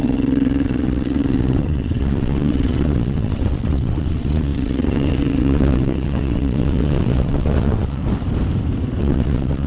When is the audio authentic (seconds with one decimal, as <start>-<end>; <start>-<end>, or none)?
8.0-9.0